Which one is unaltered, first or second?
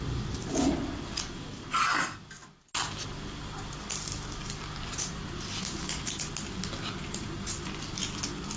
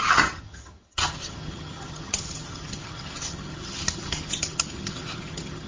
first